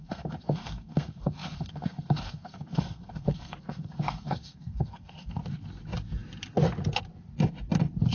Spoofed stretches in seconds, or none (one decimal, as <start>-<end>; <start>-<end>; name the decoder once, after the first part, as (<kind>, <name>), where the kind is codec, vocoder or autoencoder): 0.0-5.4 (codec, SNAC)